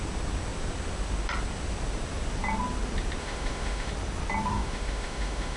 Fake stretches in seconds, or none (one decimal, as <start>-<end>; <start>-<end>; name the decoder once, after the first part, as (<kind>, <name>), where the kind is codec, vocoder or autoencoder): 3.2-3.9 (autoencoder, DAC-VAE); 4.5-5.6